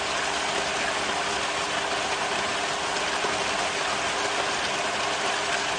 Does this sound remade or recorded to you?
recorded